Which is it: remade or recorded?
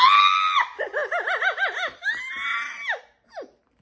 recorded